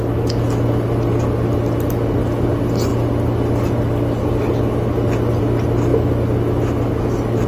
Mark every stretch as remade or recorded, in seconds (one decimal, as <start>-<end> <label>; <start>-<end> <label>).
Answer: 0.0-5.9 recorded; 5.9-7.0 remade; 7.0-7.5 recorded